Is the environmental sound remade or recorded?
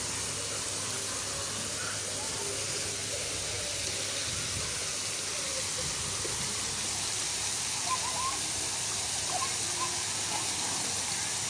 recorded